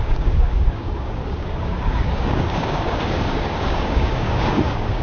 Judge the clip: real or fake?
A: fake